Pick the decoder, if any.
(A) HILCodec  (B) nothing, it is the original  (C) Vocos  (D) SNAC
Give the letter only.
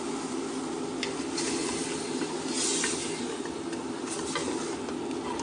B